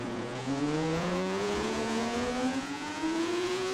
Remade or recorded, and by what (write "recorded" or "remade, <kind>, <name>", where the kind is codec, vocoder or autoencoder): remade, vocoder, Vocos